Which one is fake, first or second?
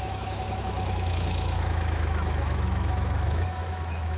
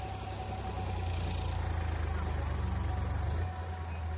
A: first